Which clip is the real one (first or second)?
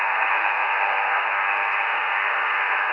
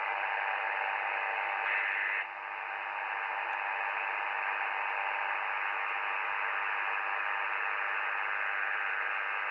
second